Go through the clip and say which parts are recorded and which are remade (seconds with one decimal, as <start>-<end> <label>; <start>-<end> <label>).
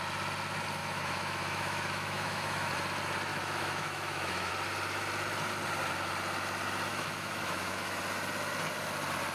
0.0-0.8 recorded; 0.8-2.7 remade; 2.7-3.3 recorded; 3.3-4.5 remade; 4.5-6.9 recorded; 6.9-8.0 remade; 8.0-9.3 recorded